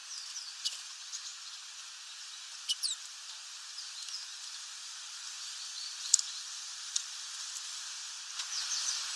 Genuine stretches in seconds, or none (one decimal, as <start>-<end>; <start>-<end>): 0.0-9.2